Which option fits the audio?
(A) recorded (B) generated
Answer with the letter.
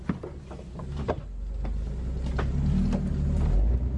A